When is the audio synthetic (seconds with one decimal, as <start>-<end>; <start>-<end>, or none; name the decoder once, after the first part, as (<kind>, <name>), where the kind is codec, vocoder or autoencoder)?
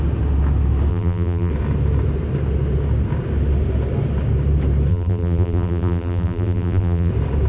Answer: 0.9-1.5 (vocoder, BigVGAN v2); 4.9-7.1